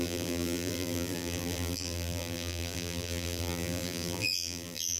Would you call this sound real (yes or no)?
no